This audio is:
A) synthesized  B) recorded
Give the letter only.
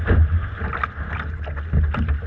B